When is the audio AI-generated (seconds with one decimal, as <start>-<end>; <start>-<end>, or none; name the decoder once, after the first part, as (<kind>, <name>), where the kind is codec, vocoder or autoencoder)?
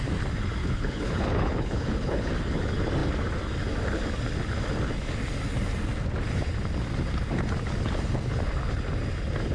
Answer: 0.6-2.3 (codec, HILCodec)